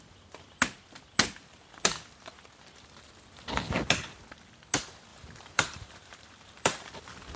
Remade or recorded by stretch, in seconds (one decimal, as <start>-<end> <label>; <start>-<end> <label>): 0.0-5.1 recorded; 5.1-6.9 remade; 6.9-7.4 recorded